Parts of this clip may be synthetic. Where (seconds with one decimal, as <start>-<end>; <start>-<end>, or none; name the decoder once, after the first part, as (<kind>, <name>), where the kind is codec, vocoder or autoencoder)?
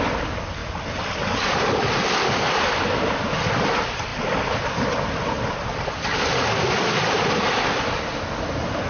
4.1-8.2 (vocoder, BigVGAN v2)